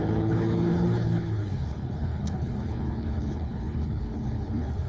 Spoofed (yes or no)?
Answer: yes